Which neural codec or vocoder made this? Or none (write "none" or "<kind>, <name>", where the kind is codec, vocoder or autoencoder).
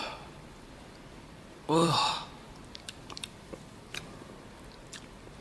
vocoder, BigVGAN v2